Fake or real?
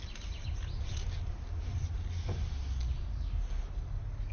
real